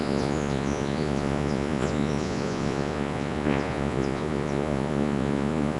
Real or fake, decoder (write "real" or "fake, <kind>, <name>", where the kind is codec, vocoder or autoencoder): fake, vocoder, Vocos